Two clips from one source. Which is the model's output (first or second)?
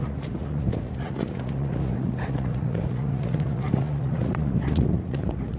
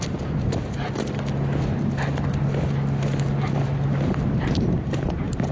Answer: first